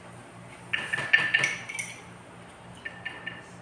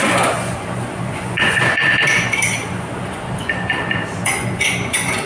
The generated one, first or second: second